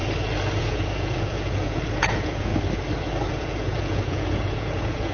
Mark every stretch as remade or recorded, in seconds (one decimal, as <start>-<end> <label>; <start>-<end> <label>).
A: 0.0-0.6 recorded; 0.6-2.5 remade; 2.5-3.3 recorded; 3.3-5.1 remade